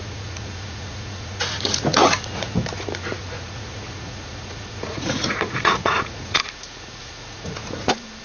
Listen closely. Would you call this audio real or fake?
fake